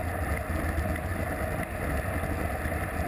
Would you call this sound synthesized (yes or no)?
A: no